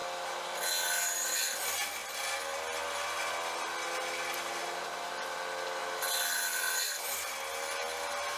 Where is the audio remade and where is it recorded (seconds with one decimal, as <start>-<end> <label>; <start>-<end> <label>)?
0.0-8.4 recorded